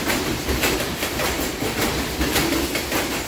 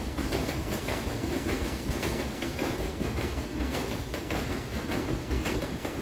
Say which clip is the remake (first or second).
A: second